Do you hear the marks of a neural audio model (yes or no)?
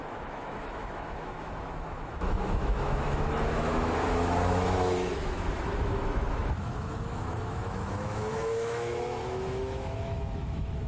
yes